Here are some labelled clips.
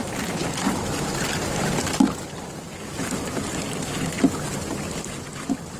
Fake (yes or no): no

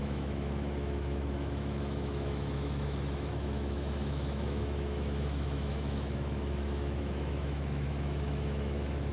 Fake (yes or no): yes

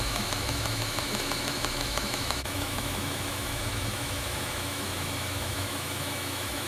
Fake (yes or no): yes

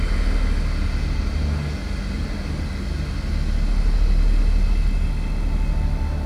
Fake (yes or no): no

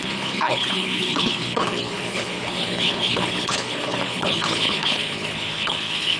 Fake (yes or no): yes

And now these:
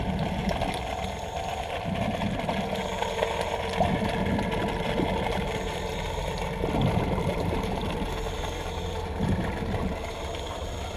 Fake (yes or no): no